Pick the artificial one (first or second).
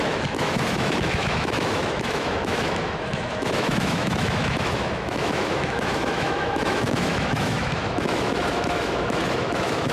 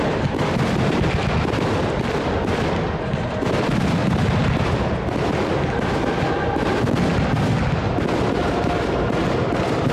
first